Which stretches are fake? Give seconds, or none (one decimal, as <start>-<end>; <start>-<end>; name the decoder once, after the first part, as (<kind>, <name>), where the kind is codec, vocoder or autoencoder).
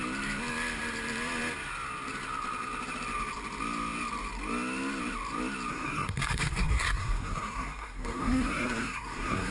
5.7-9.5 (codec, SNAC)